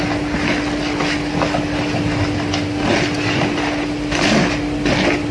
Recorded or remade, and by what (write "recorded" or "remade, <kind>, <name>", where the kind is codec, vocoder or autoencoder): recorded